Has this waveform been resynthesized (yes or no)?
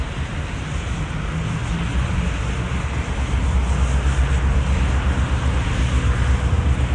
no